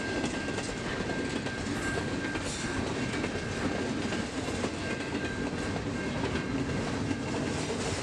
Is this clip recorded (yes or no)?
yes